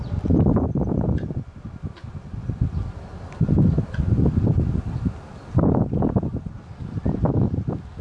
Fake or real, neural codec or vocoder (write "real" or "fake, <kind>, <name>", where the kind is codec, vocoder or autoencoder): fake, vocoder, BigVGAN v2